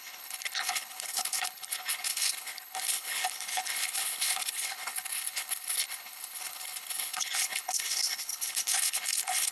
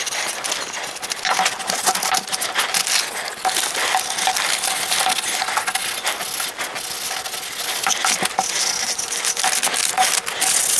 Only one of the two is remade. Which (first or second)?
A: first